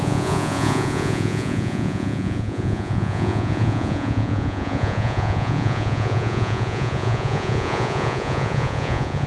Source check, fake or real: fake